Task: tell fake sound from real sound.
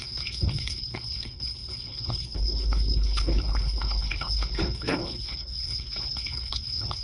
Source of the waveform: fake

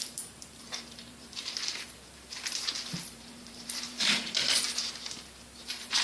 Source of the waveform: fake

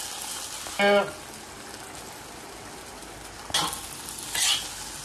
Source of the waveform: real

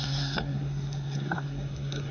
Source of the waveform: fake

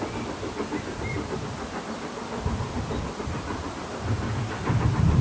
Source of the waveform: real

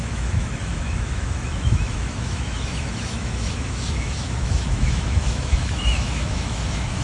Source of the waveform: fake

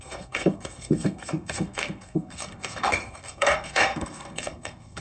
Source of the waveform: fake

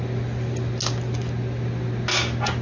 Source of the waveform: real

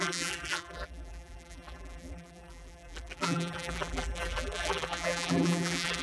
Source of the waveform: fake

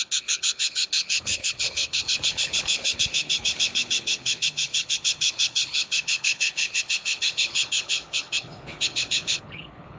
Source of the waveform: fake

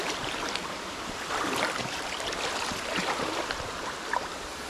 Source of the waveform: real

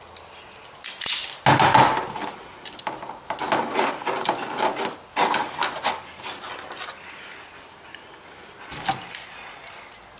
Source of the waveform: real